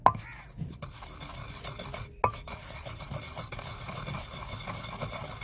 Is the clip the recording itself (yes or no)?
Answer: yes